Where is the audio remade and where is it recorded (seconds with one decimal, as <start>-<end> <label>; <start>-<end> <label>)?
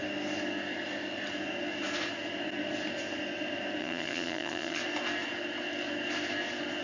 0.0-3.8 recorded; 3.8-4.8 remade; 4.8-6.8 recorded